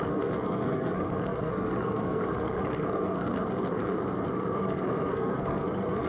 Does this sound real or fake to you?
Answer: fake